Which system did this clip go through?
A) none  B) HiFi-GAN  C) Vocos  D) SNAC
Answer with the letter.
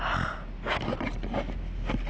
A